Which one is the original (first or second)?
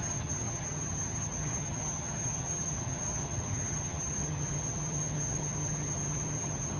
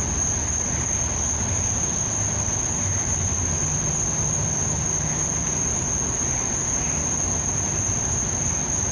second